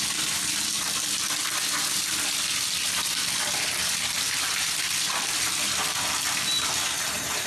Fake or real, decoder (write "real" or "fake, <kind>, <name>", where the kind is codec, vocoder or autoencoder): real